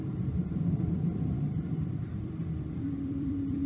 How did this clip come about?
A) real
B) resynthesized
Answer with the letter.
B